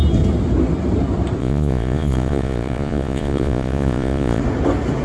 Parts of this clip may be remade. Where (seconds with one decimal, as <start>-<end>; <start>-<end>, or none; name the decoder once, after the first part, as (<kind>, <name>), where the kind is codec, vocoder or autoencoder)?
1.4-4.4 (vocoder, Vocos)